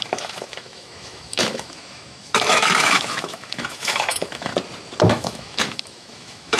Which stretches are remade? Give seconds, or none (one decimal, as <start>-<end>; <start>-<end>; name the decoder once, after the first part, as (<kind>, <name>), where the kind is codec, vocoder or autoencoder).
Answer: 0.0-4.5 (autoencoder, DAC-VAE); 5.1-6.6